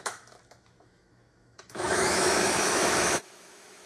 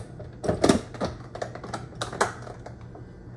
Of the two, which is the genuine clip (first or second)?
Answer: second